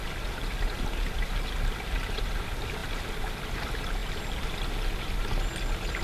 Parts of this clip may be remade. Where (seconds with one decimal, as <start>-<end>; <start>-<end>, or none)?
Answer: none